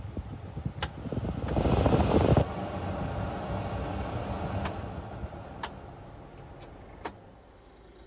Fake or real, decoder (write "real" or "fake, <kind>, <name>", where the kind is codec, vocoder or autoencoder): real